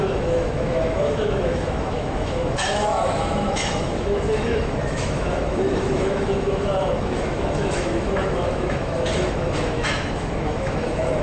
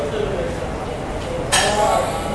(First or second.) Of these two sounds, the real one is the second